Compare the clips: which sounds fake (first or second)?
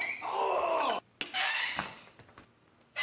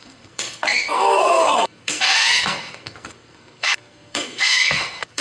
second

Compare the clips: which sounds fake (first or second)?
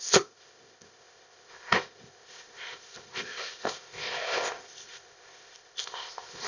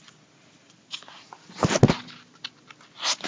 first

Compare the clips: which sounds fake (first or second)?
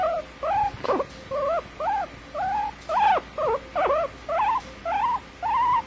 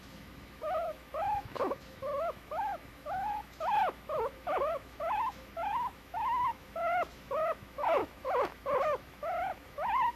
second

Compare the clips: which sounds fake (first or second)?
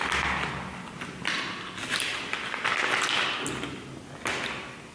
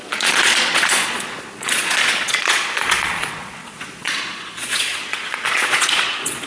second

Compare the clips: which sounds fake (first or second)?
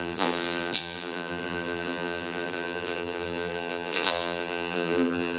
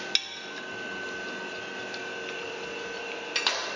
first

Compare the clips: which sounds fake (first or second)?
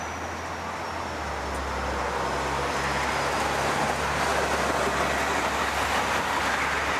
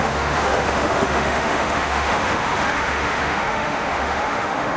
second